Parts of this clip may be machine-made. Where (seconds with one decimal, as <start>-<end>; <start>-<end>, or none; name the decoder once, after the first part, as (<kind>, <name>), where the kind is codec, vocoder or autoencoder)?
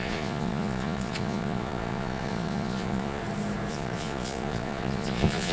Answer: 0.0-3.2 (vocoder, Vocos); 3.7-5.5